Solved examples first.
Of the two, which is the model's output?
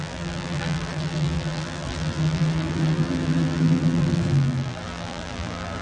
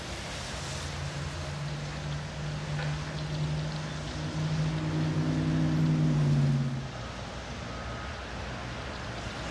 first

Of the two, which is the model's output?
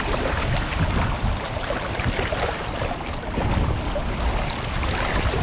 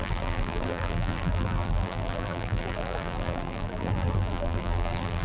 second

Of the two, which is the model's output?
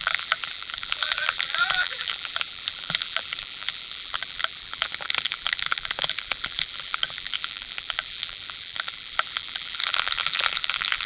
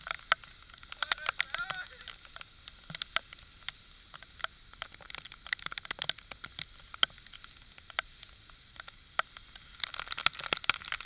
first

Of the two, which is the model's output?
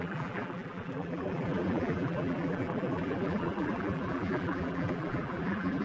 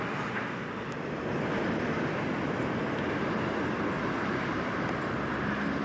first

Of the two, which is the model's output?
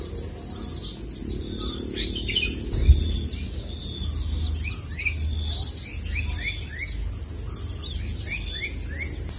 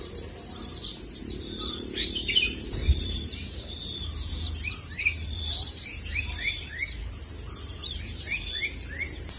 second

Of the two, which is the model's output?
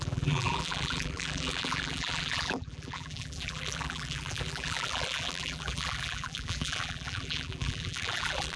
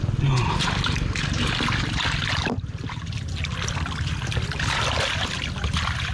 first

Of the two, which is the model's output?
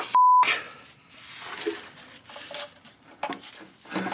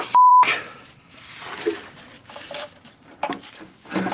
second